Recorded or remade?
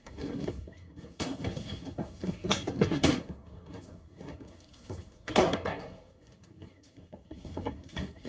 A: remade